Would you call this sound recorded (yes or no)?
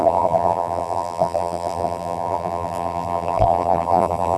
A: no